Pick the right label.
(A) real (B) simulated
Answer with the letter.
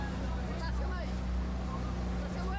A